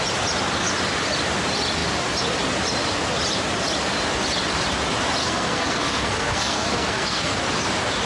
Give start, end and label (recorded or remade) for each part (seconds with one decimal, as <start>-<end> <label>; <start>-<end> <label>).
0.0-5.2 recorded; 5.2-7.4 remade; 7.4-8.1 recorded